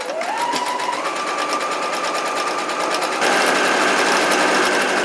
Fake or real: real